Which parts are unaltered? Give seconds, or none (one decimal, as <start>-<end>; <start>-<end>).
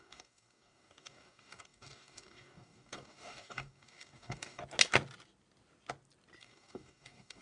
4.6-6.4